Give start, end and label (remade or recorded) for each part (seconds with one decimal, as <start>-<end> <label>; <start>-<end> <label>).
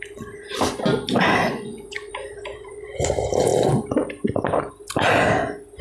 0.0-1.4 recorded; 1.4-2.1 remade; 2.1-2.5 recorded; 2.5-3.1 remade; 3.1-5.8 recorded